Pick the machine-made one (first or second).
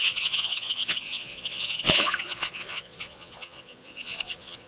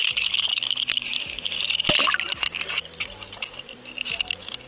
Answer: first